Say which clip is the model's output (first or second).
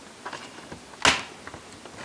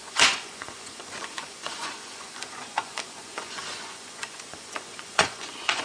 second